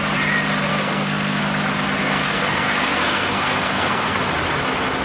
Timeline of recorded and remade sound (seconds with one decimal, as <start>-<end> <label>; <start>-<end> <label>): 0.0-0.7 recorded; 0.7-1.4 remade; 1.4-2.0 recorded; 2.0-4.2 remade; 4.2-5.0 recorded